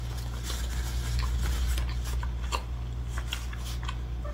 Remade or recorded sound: recorded